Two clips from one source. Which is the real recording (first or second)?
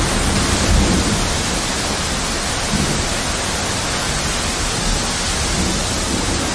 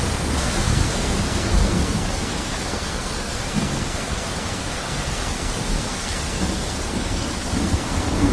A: first